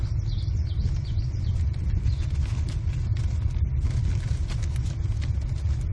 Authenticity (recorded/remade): recorded